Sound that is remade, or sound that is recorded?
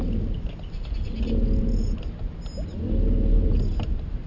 recorded